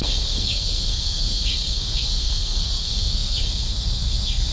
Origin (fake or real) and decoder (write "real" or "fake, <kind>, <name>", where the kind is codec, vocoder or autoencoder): fake, codec, SNAC